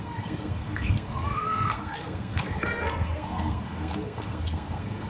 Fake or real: fake